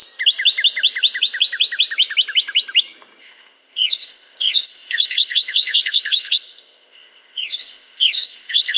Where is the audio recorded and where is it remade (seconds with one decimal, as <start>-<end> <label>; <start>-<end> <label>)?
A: 0.0-3.2 recorded; 3.2-8.8 remade